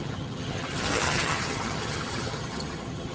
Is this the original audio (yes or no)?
no